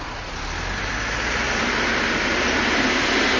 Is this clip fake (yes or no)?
no